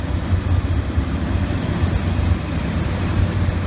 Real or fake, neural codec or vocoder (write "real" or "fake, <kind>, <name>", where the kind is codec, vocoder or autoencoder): real